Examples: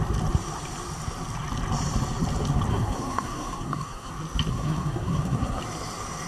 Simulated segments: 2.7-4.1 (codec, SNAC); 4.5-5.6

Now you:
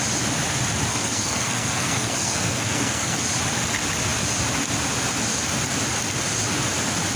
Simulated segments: 0.9-3.2 (codec, SNAC)